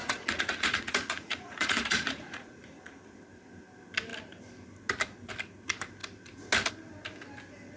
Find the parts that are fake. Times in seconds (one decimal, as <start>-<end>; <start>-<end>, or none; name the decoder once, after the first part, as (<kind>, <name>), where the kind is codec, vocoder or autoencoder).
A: 0.0-3.0 (vocoder, Vocos)